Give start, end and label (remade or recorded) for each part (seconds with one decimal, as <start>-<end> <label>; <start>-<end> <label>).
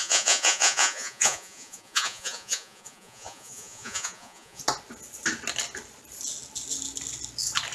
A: 0.0-4.6 remade; 4.6-7.7 recorded